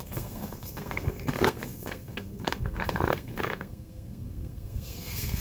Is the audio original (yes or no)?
no